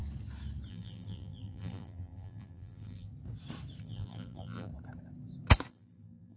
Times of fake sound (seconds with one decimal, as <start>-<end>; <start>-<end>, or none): 0.7-3.1; 3.8-4.7; 5.7-6.4

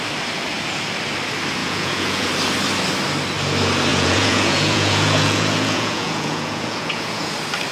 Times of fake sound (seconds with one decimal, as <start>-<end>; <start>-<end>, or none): 1.6-2.3; 3.9-7.3

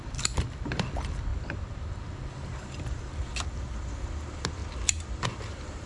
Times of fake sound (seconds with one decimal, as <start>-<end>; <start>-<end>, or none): 0.0-4.6; 5.2-5.9

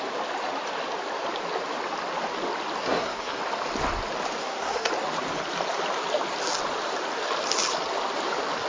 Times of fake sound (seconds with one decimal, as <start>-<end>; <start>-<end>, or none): 2.8-3.4; 4.4-4.9

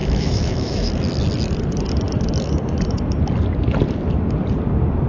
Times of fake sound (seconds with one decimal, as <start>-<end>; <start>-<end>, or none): 0.0-0.9

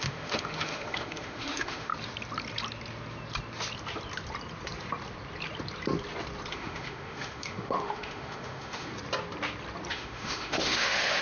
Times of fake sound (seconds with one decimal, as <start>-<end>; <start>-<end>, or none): 0.0-1.9; 6.5-8.9; 9.9-11.2